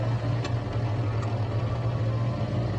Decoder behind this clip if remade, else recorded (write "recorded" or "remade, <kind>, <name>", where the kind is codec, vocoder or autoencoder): recorded